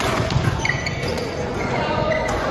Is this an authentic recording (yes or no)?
no